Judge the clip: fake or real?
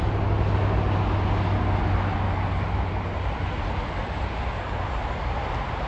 real